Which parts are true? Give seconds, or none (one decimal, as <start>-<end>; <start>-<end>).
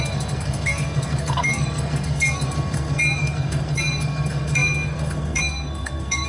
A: none